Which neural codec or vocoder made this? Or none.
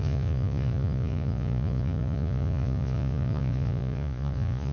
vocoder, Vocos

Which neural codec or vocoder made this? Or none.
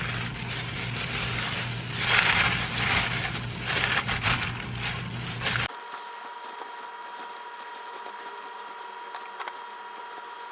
none